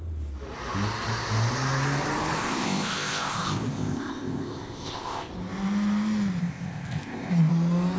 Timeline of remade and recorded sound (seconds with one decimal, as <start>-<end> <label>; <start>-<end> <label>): 0.0-2.4 recorded; 2.4-5.3 remade; 5.3-6.4 recorded; 6.4-7.5 remade; 7.5-8.0 recorded